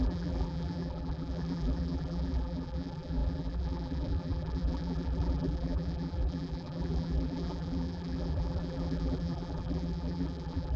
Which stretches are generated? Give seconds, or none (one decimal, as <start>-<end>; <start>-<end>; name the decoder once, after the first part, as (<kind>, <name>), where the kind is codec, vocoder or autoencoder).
0.0-10.8 (vocoder, BigVGAN v2)